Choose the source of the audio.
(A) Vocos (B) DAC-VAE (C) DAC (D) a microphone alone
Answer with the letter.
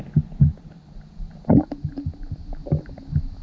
D